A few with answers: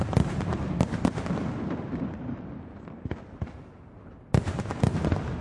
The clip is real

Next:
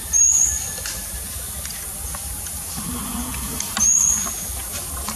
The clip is real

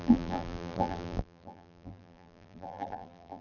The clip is fake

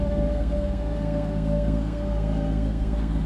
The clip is fake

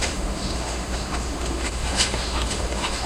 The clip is fake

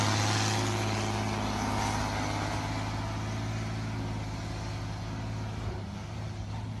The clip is real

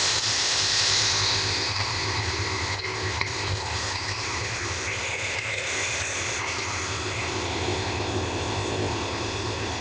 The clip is fake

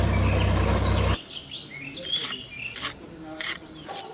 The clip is real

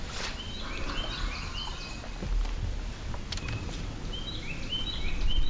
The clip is real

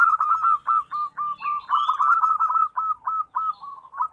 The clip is real